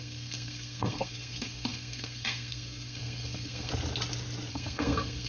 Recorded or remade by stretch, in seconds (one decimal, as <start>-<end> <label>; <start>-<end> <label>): 0.0-3.7 remade; 3.7-4.5 recorded; 4.5-5.3 remade